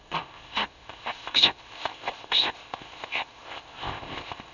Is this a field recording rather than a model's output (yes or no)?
no